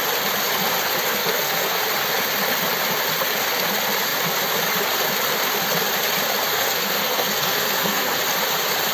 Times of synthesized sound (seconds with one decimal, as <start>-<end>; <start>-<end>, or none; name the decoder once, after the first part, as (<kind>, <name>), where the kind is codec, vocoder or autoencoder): 1.2-1.8 (codec, SNAC); 6.5-8.2